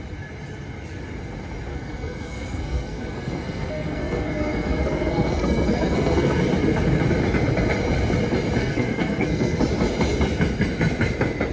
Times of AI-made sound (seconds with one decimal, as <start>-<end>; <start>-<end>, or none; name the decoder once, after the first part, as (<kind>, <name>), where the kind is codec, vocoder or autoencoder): 1.7-6.4 (codec, SNAC); 8.6-9.6